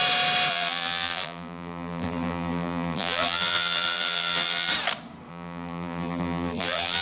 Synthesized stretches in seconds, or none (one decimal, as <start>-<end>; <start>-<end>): 0.5-4.7; 5.3-7.0